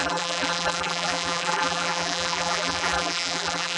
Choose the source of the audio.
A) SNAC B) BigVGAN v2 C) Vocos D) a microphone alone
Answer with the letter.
B